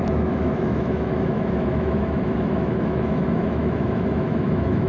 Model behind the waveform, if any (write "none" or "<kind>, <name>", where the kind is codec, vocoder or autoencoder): autoencoder, DAC-VAE